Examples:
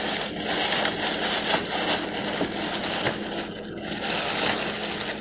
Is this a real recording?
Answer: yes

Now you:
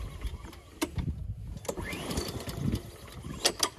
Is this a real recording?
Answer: yes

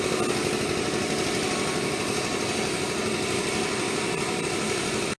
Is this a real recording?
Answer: yes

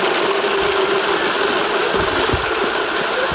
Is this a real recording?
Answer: yes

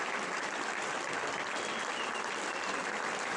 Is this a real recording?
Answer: yes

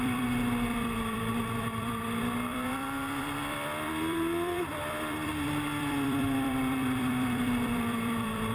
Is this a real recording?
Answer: no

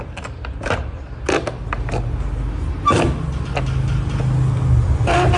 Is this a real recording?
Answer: yes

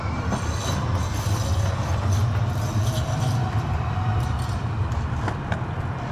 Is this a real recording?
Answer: no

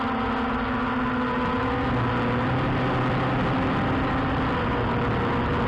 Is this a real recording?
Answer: yes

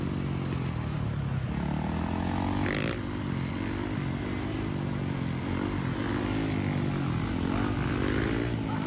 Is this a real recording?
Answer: yes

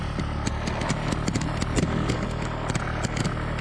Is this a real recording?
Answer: yes